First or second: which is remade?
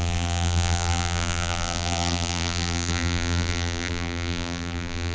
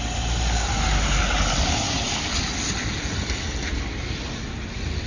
first